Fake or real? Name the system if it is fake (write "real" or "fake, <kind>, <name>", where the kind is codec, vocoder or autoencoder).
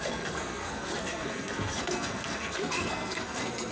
fake, codec, SNAC